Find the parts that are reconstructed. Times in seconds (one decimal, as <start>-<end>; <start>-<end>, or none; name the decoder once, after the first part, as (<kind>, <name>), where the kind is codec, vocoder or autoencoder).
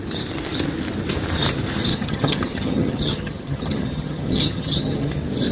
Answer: 1.9-5.1 (vocoder, HiFi-GAN)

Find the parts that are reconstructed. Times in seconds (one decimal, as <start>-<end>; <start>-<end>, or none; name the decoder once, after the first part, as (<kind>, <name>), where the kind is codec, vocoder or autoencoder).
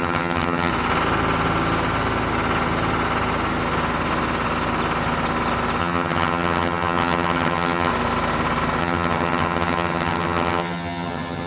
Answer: 0.0-0.7 (vocoder, HiFi-GAN); 5.8-7.9; 8.8-11.5